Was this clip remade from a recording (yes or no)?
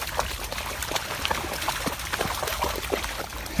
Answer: no